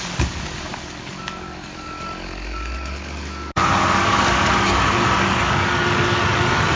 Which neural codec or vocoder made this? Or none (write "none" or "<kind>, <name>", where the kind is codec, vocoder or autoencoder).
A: codec, DAC